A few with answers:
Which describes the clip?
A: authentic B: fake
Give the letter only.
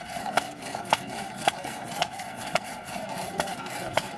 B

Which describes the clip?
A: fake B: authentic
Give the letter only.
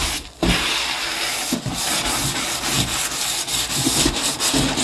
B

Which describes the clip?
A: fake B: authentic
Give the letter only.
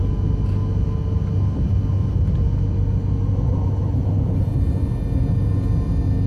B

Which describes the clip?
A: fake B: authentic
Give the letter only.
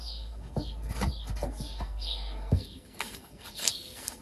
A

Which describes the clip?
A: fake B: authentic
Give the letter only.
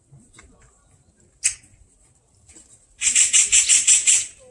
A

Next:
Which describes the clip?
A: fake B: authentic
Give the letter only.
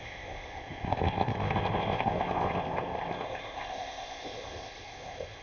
A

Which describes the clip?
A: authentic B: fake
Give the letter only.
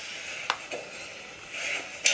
A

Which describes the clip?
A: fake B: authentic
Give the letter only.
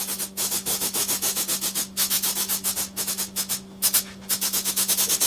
A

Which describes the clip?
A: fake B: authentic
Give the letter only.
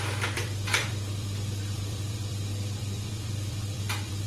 A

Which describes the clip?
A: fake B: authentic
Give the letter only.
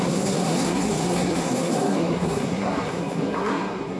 A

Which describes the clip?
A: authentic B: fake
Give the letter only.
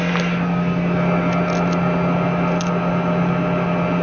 A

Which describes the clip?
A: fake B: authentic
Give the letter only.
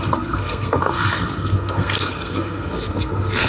A